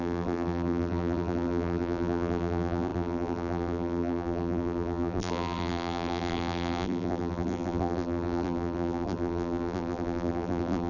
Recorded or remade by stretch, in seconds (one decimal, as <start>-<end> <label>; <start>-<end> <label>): 0.0-10.9 remade